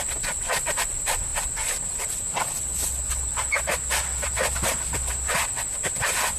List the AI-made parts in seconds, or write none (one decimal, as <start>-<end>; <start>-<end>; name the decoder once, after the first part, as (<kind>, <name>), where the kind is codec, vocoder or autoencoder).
none